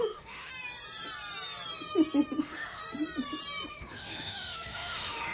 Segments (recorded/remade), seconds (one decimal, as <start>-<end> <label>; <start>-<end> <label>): 0.0-0.5 remade; 0.5-2.4 recorded; 2.4-2.8 remade; 2.8-3.7 recorded; 3.7-5.3 remade